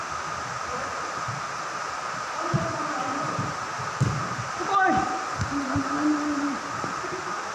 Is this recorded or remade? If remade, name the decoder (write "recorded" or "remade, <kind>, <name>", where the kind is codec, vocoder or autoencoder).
recorded